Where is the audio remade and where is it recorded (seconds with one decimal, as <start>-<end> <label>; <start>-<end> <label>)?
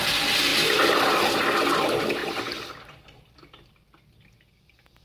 0.0-0.5 recorded; 0.5-1.4 remade; 1.4-2.2 recorded; 2.2-2.8 remade; 2.8-5.0 recorded